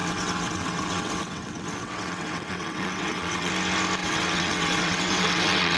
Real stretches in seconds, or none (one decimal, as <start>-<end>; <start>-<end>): 3.5-4.0